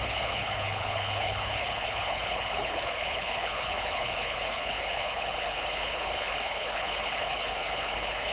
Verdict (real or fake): fake